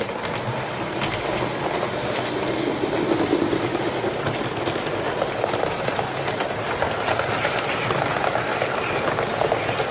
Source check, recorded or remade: recorded